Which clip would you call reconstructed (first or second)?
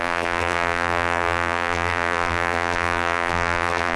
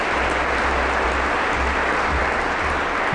first